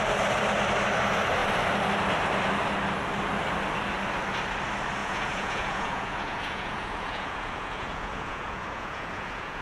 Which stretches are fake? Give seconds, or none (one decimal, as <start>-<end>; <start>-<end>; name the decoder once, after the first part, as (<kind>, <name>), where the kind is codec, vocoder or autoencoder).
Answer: 5.0-9.6 (vocoder, Vocos)